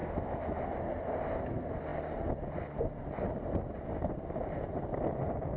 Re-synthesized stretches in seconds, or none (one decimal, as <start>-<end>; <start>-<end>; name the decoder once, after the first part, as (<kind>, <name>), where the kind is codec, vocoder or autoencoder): 0.0-0.6 (autoencoder, DAC-VAE)